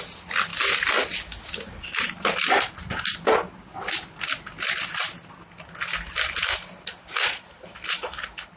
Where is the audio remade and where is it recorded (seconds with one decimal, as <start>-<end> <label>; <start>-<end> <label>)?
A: 0.0-8.6 recorded